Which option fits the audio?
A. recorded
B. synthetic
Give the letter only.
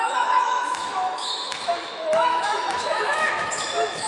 B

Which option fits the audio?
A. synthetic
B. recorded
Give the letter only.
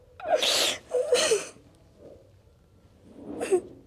B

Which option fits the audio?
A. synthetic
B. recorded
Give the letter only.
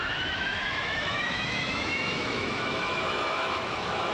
A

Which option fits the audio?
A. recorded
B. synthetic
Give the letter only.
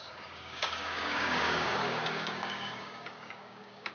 B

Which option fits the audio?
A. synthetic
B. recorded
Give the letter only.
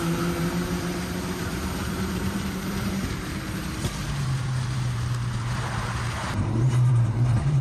A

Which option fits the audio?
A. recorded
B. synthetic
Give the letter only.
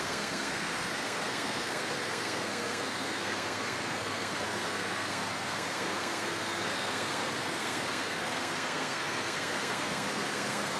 B